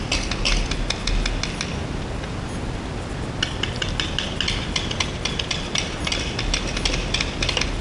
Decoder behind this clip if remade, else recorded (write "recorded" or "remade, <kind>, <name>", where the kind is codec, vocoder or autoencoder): recorded